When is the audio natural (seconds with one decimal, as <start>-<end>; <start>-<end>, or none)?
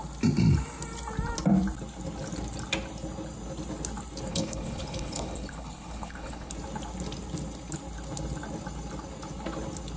0.0-4.3; 6.5-10.0